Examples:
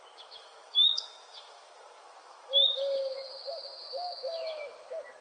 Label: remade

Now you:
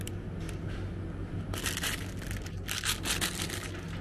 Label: recorded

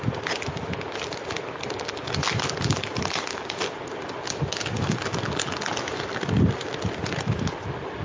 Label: recorded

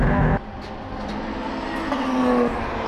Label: recorded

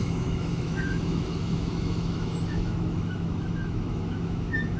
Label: remade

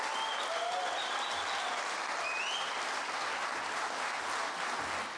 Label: recorded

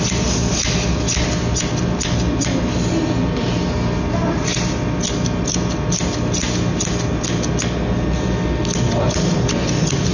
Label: recorded